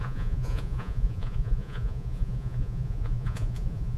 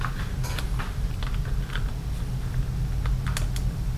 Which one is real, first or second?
second